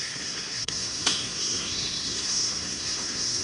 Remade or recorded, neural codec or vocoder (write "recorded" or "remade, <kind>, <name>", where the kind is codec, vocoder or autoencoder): remade, codec, SNAC